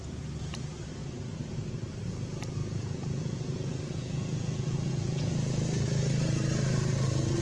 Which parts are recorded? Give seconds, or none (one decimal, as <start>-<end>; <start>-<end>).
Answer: 0.0-2.6; 5.3-7.4